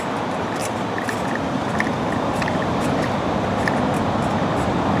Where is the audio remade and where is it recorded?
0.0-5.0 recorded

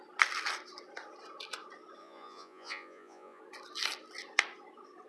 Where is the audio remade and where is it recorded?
0.0-2.0 recorded; 2.0-3.4 remade; 3.4-5.1 recorded

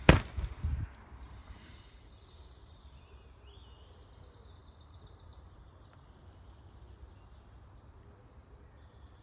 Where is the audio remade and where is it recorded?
0.0-1.4 recorded; 1.4-2.8 remade; 2.8-4.6 recorded; 4.6-5.7 remade; 5.7-9.2 recorded

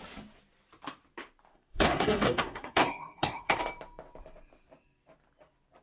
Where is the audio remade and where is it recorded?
0.0-1.5 recorded; 1.5-3.6 remade; 3.6-5.8 recorded

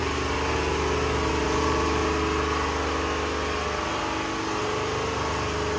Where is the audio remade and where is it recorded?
0.0-1.3 recorded; 1.3-2.0 remade; 2.0-5.8 recorded

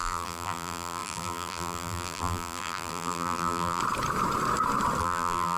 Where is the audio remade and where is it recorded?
0.0-3.8 remade; 3.8-5.0 recorded; 5.0-5.6 remade

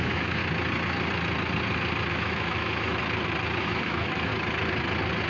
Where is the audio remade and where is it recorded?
0.0-0.4 remade; 0.4-2.1 recorded; 2.1-3.0 remade; 3.0-3.6 recorded; 3.6-4.3 remade; 4.3-5.3 recorded

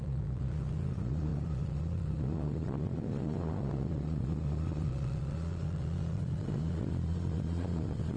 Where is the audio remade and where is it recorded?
0.0-8.2 remade